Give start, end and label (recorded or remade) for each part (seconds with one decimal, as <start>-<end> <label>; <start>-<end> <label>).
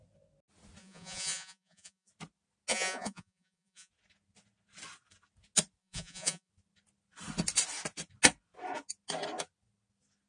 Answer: 0.0-0.8 recorded; 0.8-2.1 remade; 2.1-2.7 recorded; 2.7-3.9 remade; 3.9-5.8 recorded; 5.8-6.5 remade; 6.5-10.3 recorded